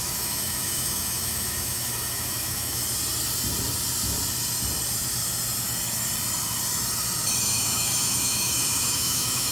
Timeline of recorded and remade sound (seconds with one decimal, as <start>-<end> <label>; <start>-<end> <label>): 0.0-2.8 remade; 2.8-7.4 recorded; 7.4-9.5 remade